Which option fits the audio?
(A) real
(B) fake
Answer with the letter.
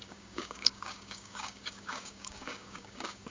B